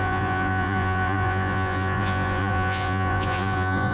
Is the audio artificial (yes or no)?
yes